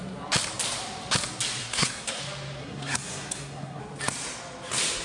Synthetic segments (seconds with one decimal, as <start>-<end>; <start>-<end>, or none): 1.6-2.2; 2.6-3.8